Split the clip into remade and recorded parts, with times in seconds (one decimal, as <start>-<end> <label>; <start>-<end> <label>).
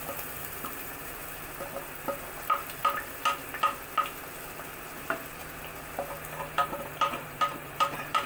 0.0-1.2 remade; 1.2-4.6 recorded; 4.6-5.4 remade; 5.4-6.4 recorded; 6.4-8.3 remade